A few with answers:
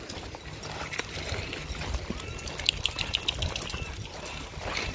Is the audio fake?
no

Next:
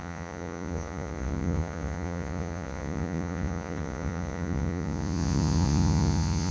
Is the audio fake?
yes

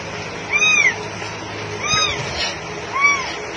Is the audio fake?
no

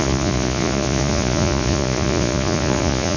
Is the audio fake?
yes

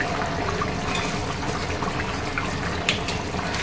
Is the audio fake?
no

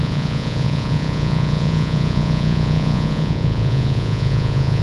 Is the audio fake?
yes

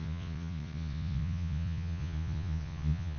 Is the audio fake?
yes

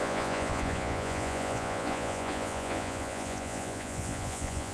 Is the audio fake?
yes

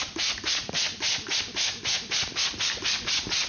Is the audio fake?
no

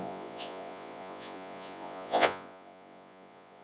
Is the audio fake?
yes